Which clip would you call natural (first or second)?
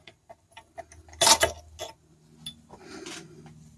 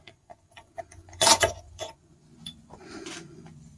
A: first